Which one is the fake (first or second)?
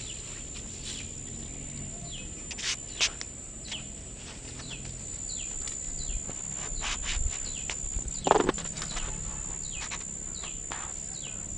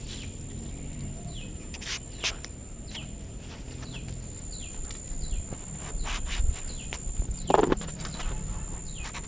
second